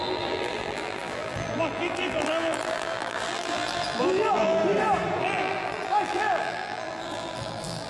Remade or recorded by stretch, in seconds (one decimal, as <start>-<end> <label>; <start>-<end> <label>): 0.0-4.6 remade; 4.6-5.2 recorded; 5.2-7.9 remade